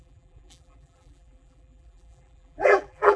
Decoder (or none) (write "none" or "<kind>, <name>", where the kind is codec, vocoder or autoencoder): vocoder, BigVGAN v2